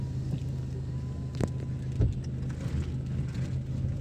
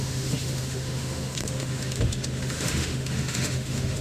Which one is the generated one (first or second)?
second